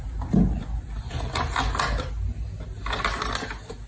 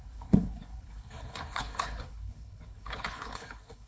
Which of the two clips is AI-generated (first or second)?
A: second